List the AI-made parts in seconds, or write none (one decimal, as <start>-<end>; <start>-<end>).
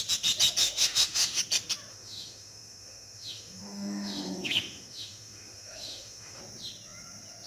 0.6-1.4; 1.9-6.4